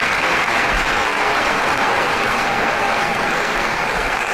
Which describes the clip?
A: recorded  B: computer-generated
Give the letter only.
B